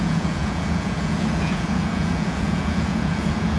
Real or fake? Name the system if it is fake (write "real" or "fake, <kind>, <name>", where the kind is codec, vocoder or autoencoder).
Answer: fake, vocoder, Vocos